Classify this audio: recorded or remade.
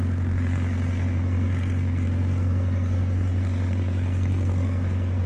remade